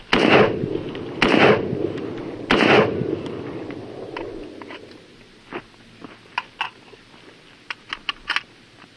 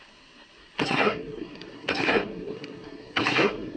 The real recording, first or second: first